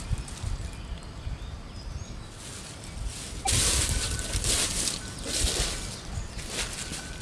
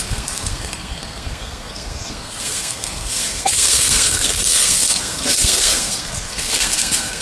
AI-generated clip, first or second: second